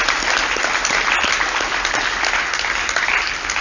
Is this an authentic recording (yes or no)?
yes